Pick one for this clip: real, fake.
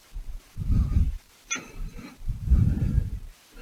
fake